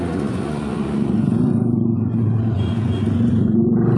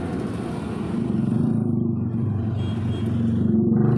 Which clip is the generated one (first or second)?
first